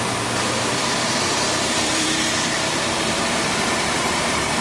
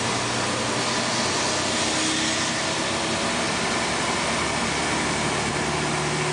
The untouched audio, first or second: second